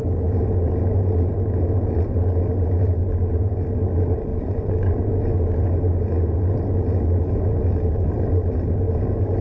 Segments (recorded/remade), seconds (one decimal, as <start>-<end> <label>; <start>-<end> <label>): 0.0-4.3 recorded; 4.3-5.1 remade; 5.1-9.4 recorded

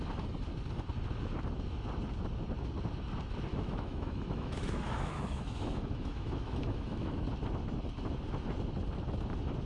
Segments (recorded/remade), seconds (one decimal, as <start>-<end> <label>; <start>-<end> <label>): 0.0-3.5 recorded; 3.5-7.2 remade; 7.2-9.7 recorded

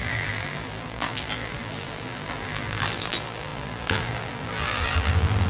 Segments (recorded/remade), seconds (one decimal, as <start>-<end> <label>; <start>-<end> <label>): 0.0-5.5 remade

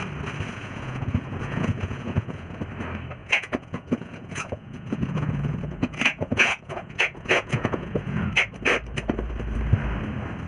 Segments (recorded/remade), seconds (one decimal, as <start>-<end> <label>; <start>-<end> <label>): 0.0-0.5 recorded; 0.5-2.6 remade; 2.6-3.2 recorded; 3.2-8.3 remade; 8.3-10.5 recorded

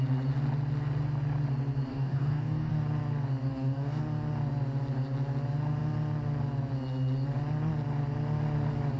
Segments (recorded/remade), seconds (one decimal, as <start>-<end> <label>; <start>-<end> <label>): 0.0-1.9 recorded; 1.9-2.7 remade; 2.7-3.5 recorded; 3.5-4.0 remade; 4.0-9.0 recorded